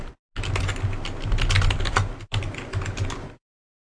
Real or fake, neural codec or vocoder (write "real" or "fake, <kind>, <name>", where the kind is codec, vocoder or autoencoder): real